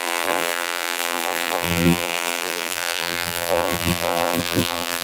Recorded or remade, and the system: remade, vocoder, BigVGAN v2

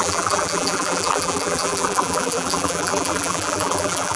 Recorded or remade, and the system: remade, vocoder, BigVGAN v2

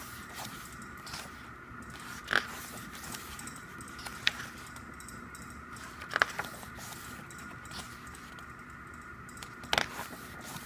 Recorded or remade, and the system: recorded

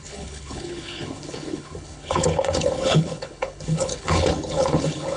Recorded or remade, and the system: remade, codec, HILCodec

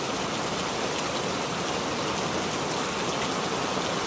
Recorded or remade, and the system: recorded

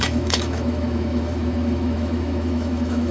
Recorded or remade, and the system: remade, autoencoder, DAC-VAE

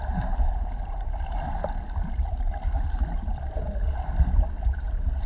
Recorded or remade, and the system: recorded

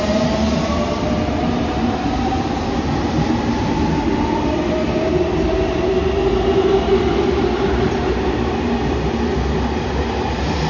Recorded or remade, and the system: recorded